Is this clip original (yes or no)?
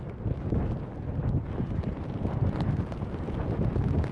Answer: yes